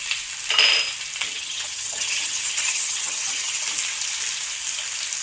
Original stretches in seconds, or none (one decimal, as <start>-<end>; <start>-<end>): 0.0-1.3; 3.6-5.2